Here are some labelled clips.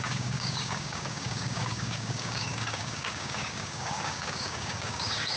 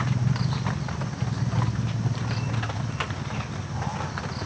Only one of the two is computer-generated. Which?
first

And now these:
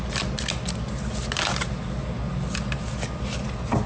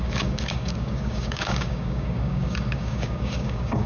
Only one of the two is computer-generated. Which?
second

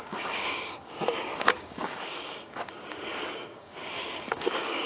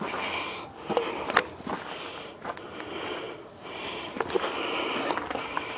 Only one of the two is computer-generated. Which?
first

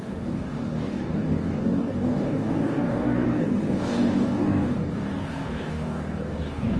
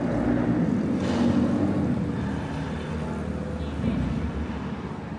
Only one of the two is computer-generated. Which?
first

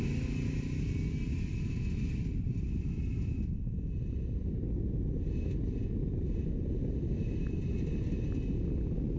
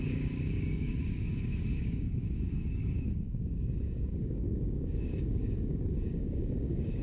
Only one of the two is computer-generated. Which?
second